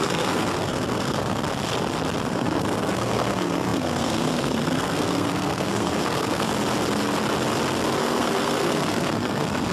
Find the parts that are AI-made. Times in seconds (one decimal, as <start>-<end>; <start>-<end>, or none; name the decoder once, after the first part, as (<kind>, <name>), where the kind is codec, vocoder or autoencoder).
0.0-1.5 (codec, SNAC); 2.3-6.5; 8.0-9.7